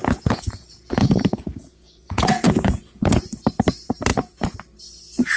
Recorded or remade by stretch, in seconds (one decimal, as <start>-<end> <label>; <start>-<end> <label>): 0.0-3.2 remade; 3.2-4.1 recorded; 4.1-4.6 remade; 4.6-5.4 recorded

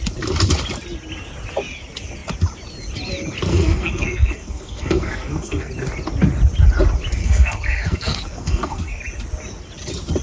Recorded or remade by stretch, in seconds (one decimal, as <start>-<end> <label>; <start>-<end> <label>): 0.0-3.5 recorded; 3.5-5.7 remade; 5.7-7.2 recorded; 7.2-9.0 remade; 9.0-10.2 recorded

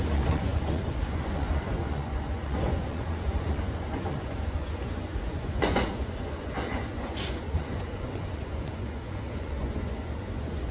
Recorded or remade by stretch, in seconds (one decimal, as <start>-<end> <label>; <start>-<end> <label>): 0.0-10.7 remade

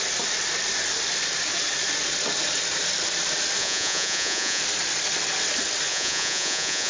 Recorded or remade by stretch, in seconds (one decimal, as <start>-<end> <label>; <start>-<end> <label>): 0.0-3.6 recorded; 3.6-4.6 remade; 4.6-5.9 recorded; 5.9-6.9 remade